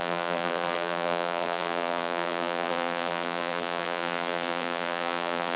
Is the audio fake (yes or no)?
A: yes